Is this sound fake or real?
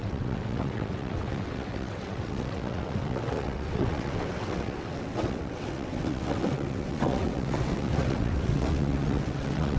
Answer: fake